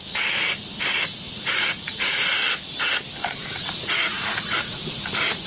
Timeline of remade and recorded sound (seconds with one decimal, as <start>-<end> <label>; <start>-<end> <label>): 0.0-1.0 recorded; 1.0-2.3 remade; 2.3-3.2 recorded; 3.2-5.5 remade